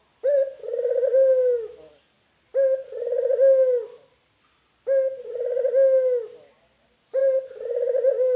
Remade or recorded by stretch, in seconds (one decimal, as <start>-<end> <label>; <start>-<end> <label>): 0.0-8.4 recorded